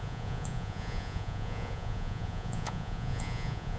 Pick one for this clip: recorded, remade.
remade